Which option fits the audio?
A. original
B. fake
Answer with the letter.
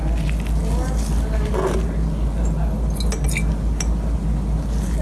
A